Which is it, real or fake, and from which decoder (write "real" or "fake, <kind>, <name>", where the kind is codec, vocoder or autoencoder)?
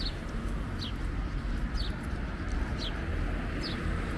real